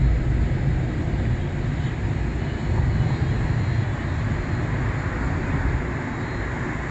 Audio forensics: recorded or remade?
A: recorded